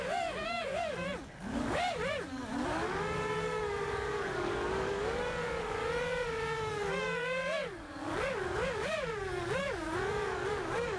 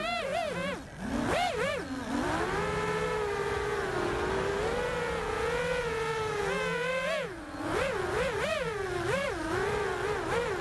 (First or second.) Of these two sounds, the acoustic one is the second